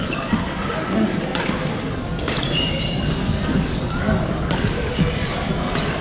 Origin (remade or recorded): remade